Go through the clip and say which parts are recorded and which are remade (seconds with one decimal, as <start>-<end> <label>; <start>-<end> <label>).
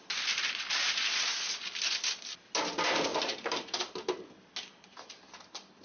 0.0-3.1 recorded; 3.1-3.8 remade; 3.8-5.8 recorded